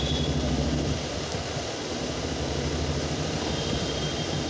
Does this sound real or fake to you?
real